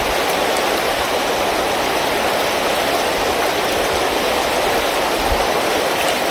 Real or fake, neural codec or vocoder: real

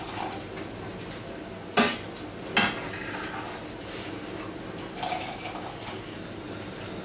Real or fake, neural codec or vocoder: real